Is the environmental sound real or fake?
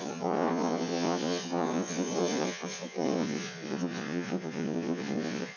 fake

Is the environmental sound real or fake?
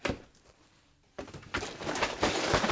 real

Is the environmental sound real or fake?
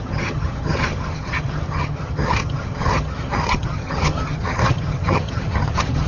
fake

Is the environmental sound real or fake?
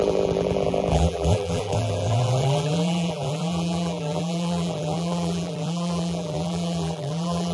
fake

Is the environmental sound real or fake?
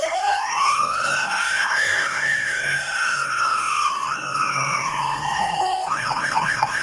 fake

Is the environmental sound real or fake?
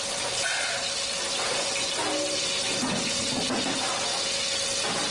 real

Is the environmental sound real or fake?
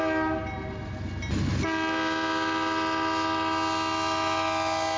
real